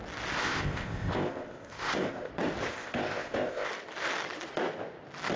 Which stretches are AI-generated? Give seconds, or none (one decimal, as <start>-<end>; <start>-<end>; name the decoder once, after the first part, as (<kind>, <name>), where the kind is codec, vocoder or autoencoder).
0.4-2.3 (codec, ZipCodec); 2.7-3.7